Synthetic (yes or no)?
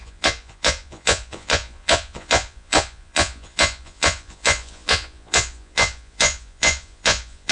yes